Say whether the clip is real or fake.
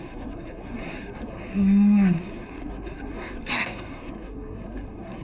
fake